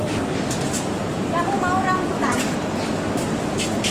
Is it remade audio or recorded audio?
recorded